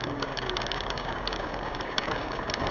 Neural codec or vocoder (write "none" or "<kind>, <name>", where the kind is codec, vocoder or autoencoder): codec, DAC